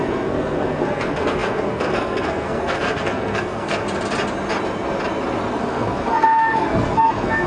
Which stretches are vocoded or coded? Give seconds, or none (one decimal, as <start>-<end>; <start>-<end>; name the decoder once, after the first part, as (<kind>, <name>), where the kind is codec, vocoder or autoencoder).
0.0-3.8 (codec, SNAC); 5.6-7.5